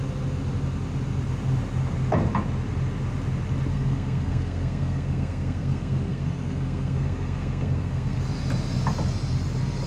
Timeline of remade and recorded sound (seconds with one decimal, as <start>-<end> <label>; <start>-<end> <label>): 0.0-3.7 recorded; 3.7-8.2 remade; 8.2-9.9 recorded